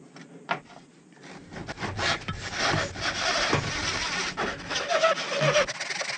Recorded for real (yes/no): yes